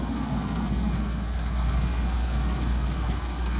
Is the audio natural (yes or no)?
no